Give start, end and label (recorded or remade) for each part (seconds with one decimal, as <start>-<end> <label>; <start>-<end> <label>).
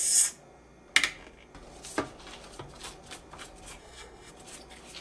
0.0-3.8 recorded; 3.8-4.3 remade; 4.3-5.0 recorded